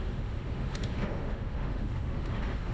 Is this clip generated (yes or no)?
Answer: yes